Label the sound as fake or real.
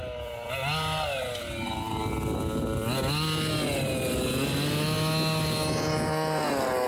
real